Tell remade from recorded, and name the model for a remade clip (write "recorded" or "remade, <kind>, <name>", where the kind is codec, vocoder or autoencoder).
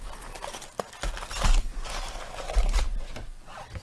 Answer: recorded